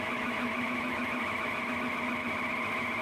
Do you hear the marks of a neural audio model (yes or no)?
yes